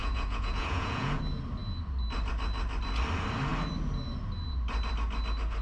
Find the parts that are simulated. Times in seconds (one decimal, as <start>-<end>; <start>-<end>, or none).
0.0-1.2

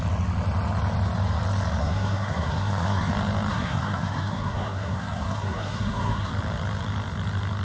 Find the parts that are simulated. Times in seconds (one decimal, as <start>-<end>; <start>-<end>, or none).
1.8-3.1; 3.5-6.3

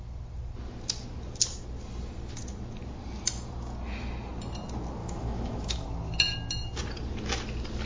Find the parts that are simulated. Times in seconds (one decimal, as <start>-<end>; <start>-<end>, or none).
5.0-6.1

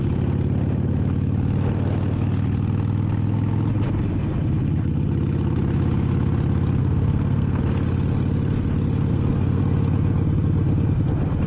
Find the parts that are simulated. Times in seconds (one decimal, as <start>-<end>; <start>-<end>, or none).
6.8-7.6; 9.1-9.6

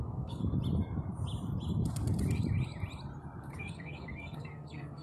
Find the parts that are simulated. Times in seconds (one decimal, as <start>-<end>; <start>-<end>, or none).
0.0-0.4; 3.4-5.0

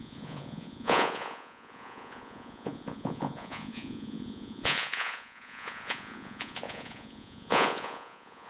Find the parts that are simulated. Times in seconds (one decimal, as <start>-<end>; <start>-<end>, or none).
0.0-8.5

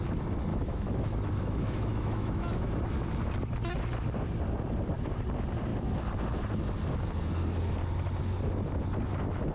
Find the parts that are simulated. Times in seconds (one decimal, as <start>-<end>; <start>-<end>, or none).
0.5-2.8